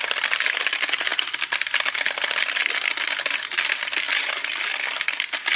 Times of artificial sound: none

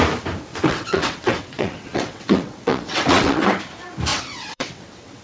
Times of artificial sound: 0.5-3.6 (vocoder, WaveNeXt); 4.1-5.2

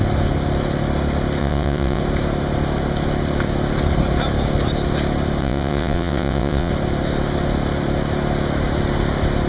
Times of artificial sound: 1.4-2.0 (vocoder, WaveNeXt); 5.4-6.7